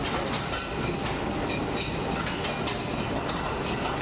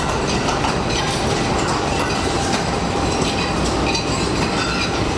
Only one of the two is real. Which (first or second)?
first